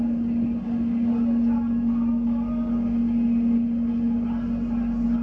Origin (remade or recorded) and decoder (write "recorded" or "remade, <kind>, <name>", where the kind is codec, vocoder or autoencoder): recorded